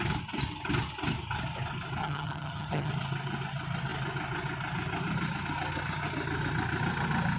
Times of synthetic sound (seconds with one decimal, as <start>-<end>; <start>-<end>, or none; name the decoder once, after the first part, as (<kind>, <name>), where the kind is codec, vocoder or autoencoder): 2.0-2.9 (vocoder, HiFi-GAN)